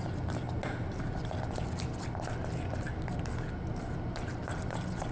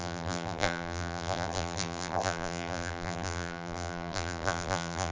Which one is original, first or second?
first